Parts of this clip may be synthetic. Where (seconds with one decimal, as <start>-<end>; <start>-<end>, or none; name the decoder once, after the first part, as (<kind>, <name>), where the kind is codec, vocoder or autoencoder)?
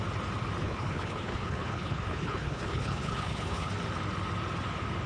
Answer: 0.6-3.7 (codec, HILCodec)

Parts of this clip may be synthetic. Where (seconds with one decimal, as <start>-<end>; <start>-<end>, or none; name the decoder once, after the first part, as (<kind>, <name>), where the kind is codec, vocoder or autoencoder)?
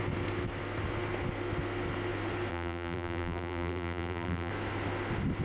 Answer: 2.5-4.5 (vocoder, BigVGAN v2)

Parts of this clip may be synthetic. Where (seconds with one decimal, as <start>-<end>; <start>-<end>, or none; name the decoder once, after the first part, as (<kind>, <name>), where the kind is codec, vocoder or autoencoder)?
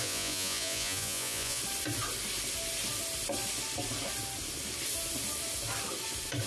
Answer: 0.0-1.6 (vocoder, Vocos)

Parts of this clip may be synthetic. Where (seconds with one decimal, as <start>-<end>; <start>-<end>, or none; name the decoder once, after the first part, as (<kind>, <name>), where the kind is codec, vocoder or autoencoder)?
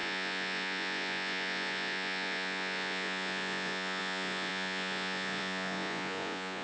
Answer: 0.0-6.6 (vocoder, Vocos)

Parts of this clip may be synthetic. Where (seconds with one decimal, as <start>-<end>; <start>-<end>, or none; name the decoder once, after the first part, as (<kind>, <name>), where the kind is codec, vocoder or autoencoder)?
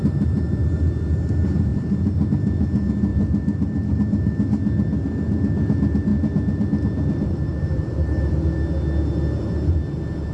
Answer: 3.1-4.0 (vocoder, BigVGAN v2); 6.1-8.3